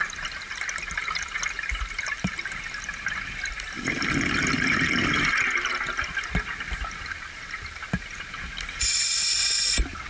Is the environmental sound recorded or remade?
recorded